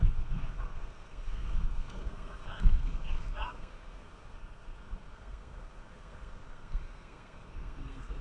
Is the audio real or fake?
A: fake